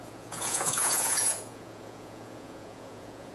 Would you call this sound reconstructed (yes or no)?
yes